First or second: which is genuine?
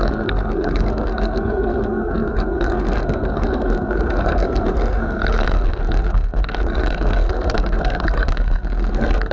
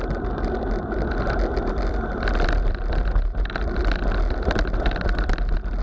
second